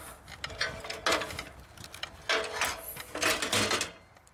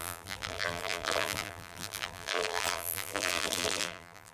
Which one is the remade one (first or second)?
second